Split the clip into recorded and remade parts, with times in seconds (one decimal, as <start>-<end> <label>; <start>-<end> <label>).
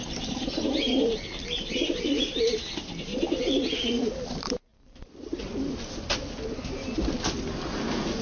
0.0-2.7 remade; 2.7-3.1 recorded; 3.1-4.3 remade; 4.3-4.7 recorded; 4.7-5.4 remade; 5.4-8.2 recorded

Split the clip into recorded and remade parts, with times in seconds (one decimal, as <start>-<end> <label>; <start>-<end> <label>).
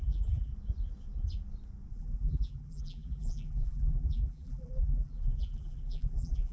0.0-0.5 remade; 0.5-1.9 recorded; 1.9-6.5 remade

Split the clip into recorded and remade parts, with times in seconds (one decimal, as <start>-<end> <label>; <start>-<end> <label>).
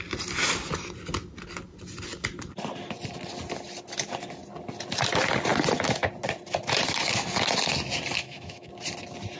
0.0-8.2 recorded; 8.2-8.7 remade; 8.7-9.4 recorded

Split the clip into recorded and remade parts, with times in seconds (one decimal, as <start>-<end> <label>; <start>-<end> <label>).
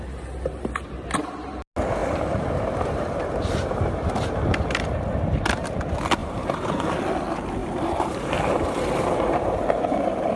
0.0-2.0 recorded; 2.0-4.1 remade; 4.1-6.2 recorded; 6.2-6.9 remade; 6.9-7.6 recorded; 7.6-10.4 remade